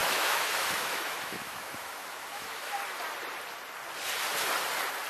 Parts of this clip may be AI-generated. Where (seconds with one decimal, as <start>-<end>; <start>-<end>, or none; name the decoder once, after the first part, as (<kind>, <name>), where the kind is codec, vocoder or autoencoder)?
0.0-2.8 (autoencoder, DAC-VAE)